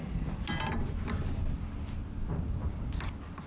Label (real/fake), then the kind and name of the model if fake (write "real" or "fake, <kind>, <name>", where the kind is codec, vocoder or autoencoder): real